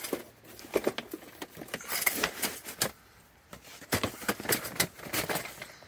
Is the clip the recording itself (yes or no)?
yes